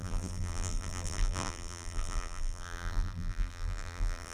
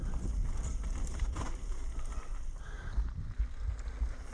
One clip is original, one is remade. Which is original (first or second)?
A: second